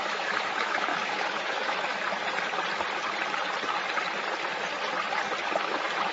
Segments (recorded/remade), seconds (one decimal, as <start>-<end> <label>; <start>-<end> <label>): 0.0-1.9 remade; 1.9-5.6 recorded; 5.6-6.1 remade